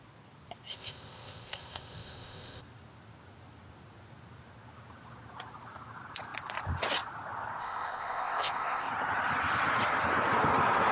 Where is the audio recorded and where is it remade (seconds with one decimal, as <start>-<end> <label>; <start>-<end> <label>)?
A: 0.0-0.7 recorded; 0.7-2.6 remade; 2.6-7.6 recorded; 7.6-8.9 remade; 8.9-10.9 recorded